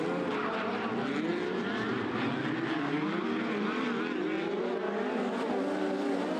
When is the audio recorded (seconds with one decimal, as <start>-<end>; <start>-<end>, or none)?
0.0-6.4